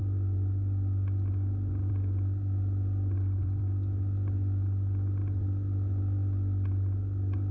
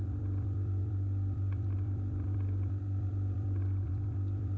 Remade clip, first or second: second